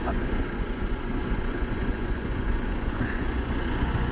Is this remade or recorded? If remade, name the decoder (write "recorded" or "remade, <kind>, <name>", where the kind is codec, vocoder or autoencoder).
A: remade, vocoder, Vocos